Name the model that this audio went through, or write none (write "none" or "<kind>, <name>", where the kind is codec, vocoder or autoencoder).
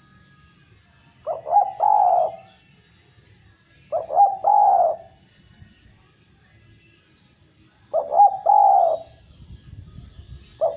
none